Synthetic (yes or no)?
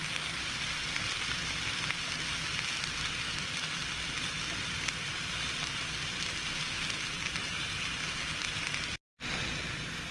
no